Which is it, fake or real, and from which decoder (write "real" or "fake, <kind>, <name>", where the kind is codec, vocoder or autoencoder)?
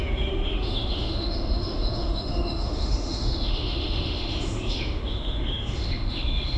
fake, autoencoder, DAC-VAE